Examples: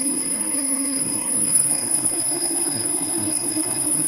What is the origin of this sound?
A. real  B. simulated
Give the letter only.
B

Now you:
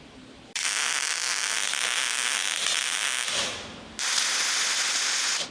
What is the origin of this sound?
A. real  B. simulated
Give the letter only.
A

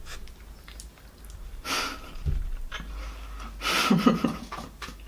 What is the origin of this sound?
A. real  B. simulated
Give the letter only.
A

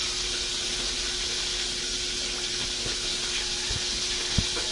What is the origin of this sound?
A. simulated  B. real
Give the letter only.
B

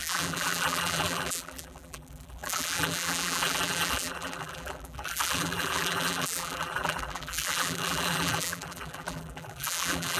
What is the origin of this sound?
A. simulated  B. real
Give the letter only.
A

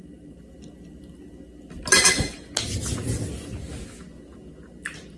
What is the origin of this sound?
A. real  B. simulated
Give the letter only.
A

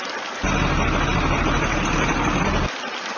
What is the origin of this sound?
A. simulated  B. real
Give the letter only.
B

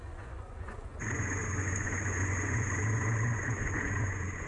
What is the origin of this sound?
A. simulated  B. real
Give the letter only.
A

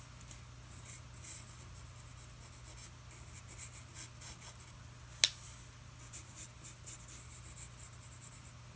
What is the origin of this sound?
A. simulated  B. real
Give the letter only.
B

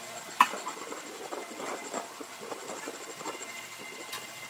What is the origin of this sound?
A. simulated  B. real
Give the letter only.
B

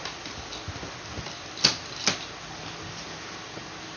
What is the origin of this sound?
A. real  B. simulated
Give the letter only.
A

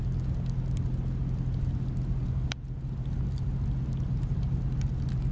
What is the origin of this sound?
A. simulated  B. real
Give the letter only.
B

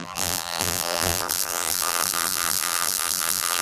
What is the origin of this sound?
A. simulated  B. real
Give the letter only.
A